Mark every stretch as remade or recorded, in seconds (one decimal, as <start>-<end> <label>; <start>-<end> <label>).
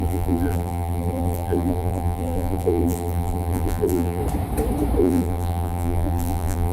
0.0-4.2 remade; 4.2-5.0 recorded; 5.0-6.7 remade